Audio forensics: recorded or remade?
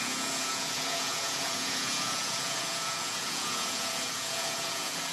remade